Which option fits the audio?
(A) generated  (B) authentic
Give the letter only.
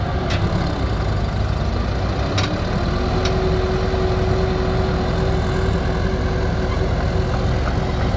B